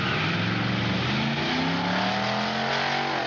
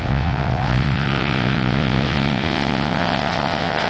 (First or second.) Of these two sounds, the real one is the first